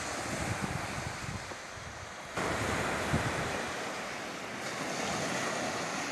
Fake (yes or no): no